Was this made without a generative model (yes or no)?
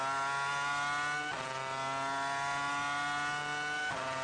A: yes